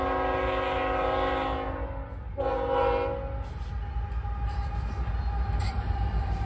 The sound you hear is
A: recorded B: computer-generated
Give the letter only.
A